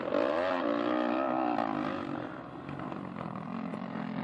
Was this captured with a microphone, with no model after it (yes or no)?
yes